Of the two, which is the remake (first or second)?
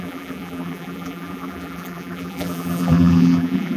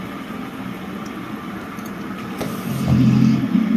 first